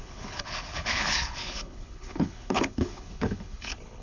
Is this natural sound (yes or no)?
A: no